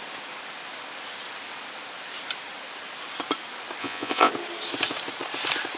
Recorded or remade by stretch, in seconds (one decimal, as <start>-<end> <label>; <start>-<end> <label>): 0.0-3.8 recorded; 3.8-4.3 remade; 4.3-5.8 recorded